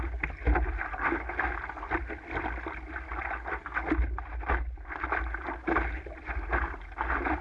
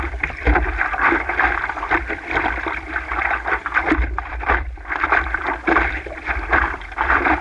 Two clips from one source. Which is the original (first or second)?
first